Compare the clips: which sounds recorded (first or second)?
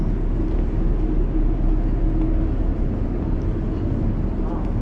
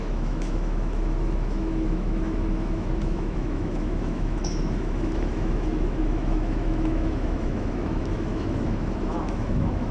first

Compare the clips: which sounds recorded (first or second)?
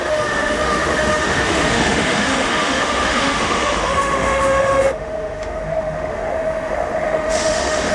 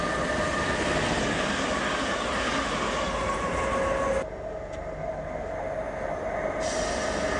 second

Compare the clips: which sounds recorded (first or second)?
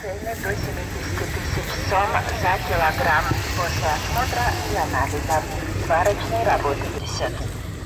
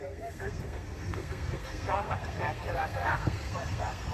first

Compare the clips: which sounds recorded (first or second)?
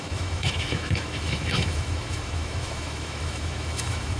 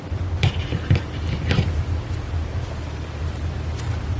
second